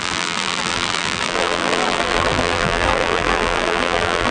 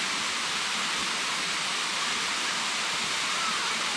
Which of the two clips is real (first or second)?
second